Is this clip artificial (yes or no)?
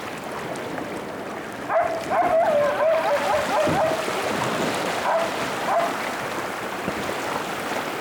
no